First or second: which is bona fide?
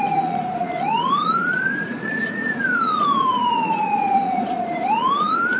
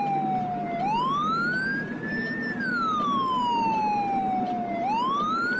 second